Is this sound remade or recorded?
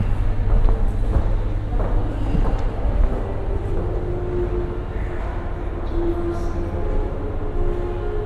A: recorded